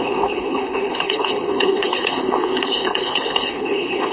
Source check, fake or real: fake